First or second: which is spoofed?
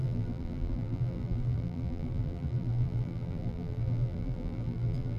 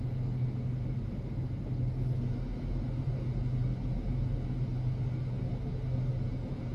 first